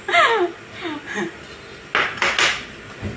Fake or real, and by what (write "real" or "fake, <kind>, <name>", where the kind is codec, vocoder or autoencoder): real